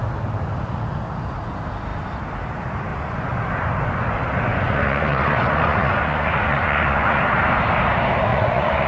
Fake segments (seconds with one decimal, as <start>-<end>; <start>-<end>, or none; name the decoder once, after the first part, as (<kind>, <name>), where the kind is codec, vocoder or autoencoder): 2.9-3.4 (vocoder, Vocos); 4.5-7.2; 8.3-8.9